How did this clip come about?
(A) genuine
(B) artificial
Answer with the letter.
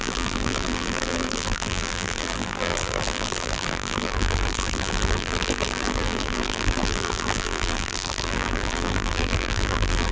B